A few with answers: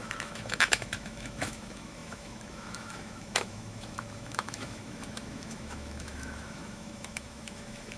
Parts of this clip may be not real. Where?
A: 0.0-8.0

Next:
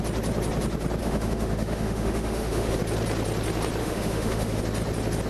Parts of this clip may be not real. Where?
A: 1.0-2.8; 3.8-4.6

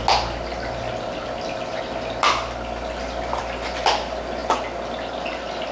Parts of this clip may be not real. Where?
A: none

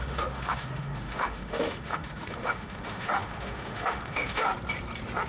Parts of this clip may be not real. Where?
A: 0.0-4.5

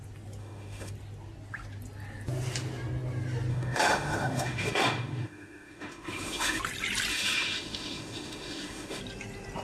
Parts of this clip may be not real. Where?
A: 0.4-0.9; 3.5-6.6; 7.1-9.0

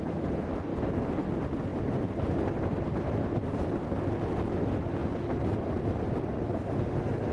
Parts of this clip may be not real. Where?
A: none

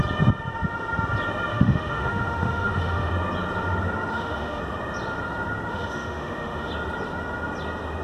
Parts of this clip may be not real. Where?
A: 1.5-3.1; 4.1-4.6; 5.7-6.7